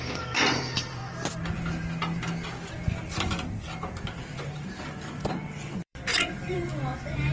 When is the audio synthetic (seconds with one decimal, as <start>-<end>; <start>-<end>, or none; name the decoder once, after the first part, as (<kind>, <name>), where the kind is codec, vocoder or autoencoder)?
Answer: 0.0-1.0 (vocoder, BigVGAN v2); 5.3-7.3